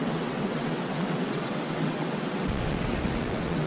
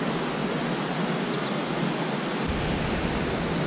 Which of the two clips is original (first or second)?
second